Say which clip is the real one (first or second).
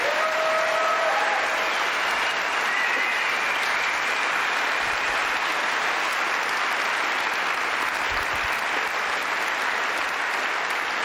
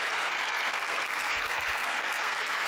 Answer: first